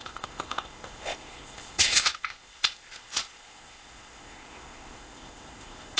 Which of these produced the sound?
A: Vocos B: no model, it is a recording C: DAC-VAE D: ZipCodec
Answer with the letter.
D